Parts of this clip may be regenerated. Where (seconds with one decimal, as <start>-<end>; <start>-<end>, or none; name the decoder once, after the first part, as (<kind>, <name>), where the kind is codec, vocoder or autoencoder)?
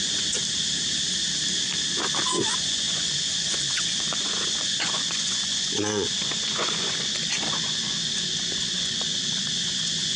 0.0-0.4 (vocoder, Vocos); 2.2-10.2